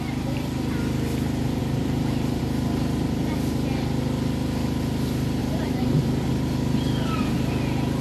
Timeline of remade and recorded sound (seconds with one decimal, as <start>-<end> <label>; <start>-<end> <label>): 0.0-1.6 recorded; 1.6-2.4 remade; 2.4-5.4 recorded; 5.4-6.3 remade; 6.3-8.0 recorded